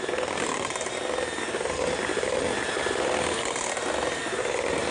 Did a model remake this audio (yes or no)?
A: no